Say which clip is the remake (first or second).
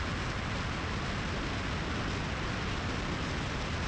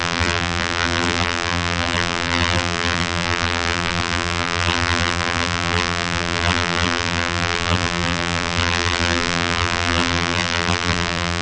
second